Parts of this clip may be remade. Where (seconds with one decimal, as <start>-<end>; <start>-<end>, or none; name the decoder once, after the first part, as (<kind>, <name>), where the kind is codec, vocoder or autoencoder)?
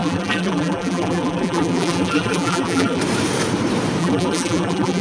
0.0-3.0 (vocoder, BigVGAN v2); 4.0-5.0